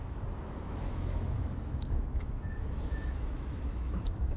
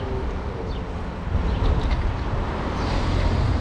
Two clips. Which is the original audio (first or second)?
second